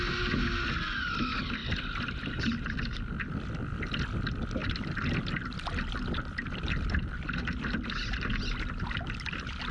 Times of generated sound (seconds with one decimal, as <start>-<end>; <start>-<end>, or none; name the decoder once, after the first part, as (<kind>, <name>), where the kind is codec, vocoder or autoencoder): 1.6-3.1 (vocoder, BigVGAN v2); 4.6-7.3